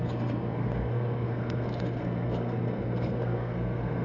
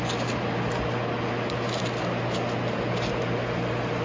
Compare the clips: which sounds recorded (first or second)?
second